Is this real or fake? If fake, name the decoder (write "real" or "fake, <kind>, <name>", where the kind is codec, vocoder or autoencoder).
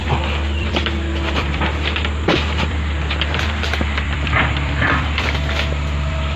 fake, vocoder, BigVGAN v2